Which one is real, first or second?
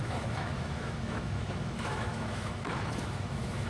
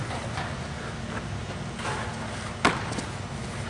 second